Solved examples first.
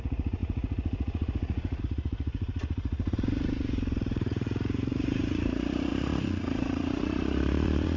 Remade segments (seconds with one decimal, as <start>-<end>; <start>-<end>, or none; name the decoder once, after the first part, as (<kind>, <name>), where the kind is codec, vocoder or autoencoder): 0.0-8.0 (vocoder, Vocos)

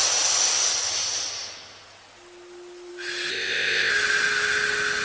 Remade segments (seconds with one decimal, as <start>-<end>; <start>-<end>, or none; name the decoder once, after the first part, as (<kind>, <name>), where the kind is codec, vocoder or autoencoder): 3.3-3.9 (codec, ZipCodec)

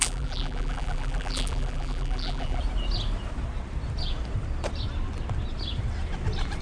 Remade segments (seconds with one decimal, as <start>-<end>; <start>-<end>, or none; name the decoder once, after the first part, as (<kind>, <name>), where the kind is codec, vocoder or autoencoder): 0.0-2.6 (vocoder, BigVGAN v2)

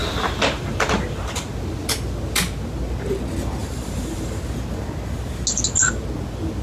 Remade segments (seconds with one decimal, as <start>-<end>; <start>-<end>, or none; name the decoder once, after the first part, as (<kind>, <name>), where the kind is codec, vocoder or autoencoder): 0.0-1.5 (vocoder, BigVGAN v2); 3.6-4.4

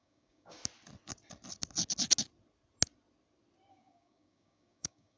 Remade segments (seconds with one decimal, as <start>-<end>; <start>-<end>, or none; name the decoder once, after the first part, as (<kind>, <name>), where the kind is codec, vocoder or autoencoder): 0.0-0.6 (codec, DAC); 3.7-5.2

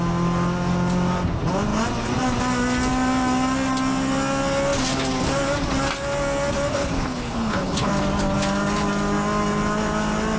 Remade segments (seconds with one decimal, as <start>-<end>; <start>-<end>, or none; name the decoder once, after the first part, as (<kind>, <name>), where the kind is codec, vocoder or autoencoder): 6.7-7.9 (codec, HILCodec)

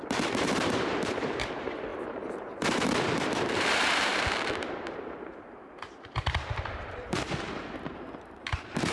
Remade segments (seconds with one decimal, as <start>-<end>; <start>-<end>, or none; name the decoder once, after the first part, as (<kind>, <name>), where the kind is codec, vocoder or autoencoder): 0.0-8.9 (vocoder, BigVGAN v2)

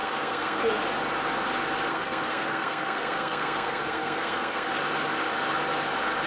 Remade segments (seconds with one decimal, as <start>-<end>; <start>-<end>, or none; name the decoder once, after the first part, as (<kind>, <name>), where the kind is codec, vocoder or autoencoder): 0.0-0.6 (codec, SNAC); 1.9-4.7